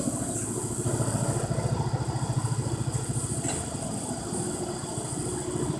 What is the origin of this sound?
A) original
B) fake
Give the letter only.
A